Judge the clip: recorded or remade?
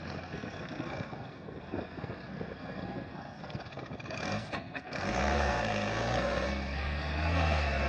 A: remade